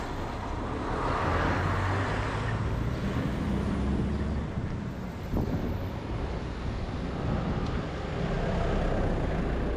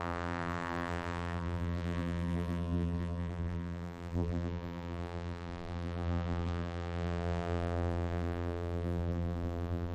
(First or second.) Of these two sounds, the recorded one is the first